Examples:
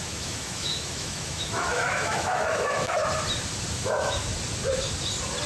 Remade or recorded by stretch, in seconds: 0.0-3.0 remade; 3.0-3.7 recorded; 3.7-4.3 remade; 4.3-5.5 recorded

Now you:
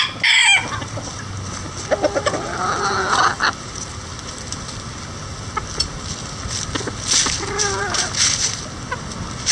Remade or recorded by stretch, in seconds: 0.0-9.5 recorded

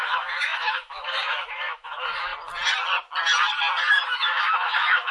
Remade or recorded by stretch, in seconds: 0.0-2.3 remade; 2.3-3.9 recorded; 3.9-5.1 remade

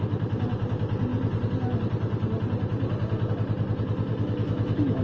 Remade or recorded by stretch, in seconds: 0.0-4.1 recorded; 4.1-5.0 remade

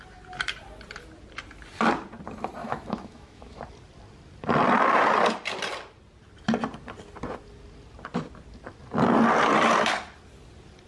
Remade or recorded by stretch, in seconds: 0.0-2.6 recorded; 2.6-3.6 remade; 3.6-10.9 recorded

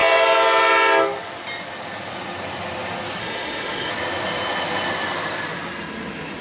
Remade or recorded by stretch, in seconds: 0.0-3.2 recorded; 3.2-3.9 remade; 3.9-6.4 recorded

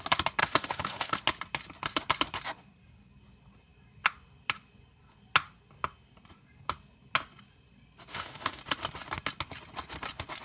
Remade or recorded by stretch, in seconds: 0.0-0.4 recorded; 0.4-1.2 remade; 1.2-8.1 recorded; 8.1-8.6 remade; 8.6-10.4 recorded

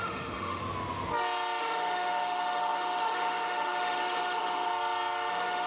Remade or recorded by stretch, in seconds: 0.0-0.6 remade; 0.6-1.6 recorded; 1.6-4.7 remade; 4.7-5.3 recorded; 5.3-5.7 remade